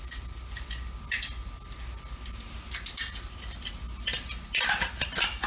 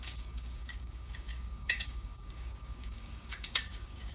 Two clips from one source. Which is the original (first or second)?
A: first